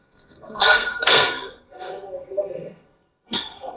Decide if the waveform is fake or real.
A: fake